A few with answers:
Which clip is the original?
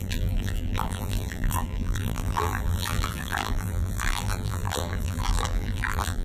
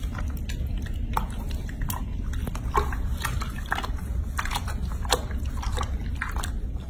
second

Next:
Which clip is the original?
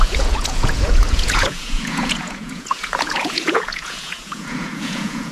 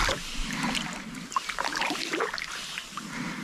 second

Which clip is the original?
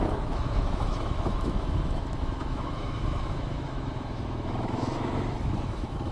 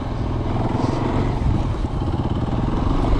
second